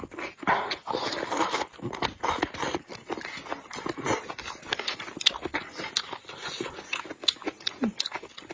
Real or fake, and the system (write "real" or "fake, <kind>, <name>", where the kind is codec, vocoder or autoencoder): real